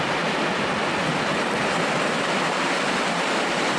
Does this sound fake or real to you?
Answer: real